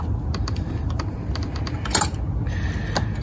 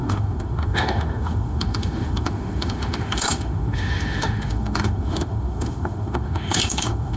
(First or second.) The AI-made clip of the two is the second